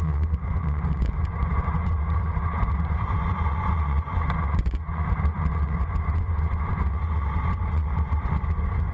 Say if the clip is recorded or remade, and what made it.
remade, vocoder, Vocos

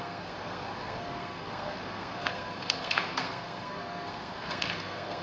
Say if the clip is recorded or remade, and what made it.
remade, codec, SNAC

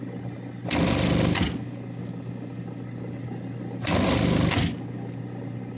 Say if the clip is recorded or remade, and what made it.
recorded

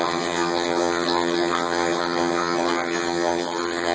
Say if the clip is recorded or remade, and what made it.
remade, vocoder, HiFi-GAN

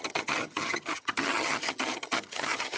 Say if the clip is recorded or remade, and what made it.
remade, vocoder, HiFi-GAN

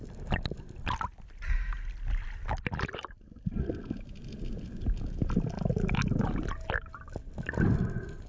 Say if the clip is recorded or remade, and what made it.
recorded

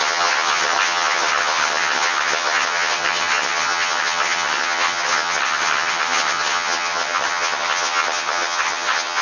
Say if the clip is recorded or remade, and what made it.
remade, vocoder, HiFi-GAN